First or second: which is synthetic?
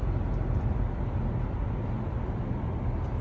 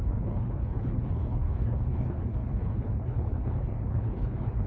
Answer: second